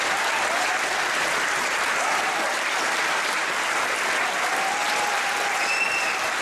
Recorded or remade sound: recorded